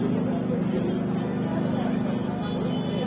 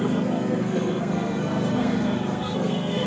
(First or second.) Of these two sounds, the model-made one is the second